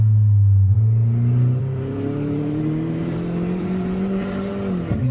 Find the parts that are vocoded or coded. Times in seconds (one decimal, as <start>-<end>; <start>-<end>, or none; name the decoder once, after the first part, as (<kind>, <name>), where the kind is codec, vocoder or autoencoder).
1.6-4.5 (vocoder, BigVGAN v2)